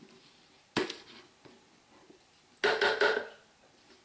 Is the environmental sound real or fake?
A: real